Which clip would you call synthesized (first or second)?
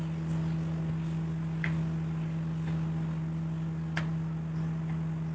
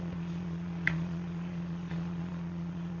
second